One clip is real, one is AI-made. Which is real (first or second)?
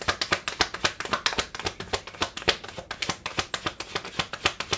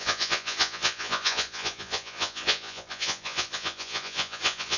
first